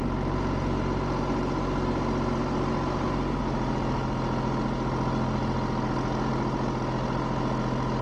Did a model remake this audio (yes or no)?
no